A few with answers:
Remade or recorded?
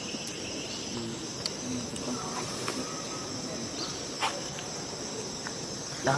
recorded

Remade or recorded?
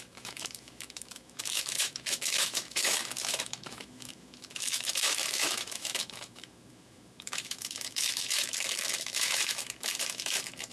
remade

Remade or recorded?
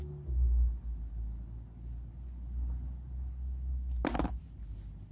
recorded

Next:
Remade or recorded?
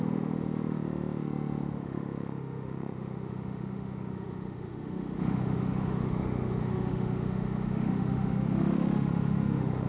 remade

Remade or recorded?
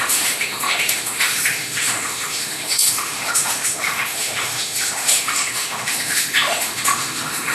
remade